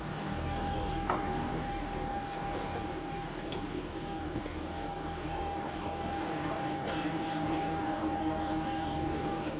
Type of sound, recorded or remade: remade